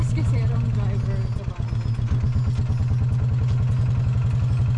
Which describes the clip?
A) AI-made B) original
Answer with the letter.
B